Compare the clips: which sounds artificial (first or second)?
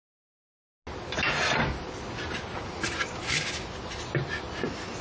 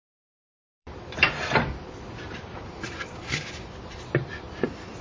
second